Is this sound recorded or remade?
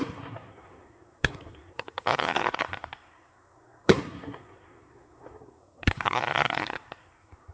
remade